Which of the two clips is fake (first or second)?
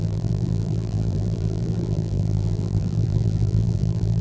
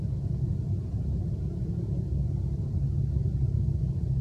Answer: first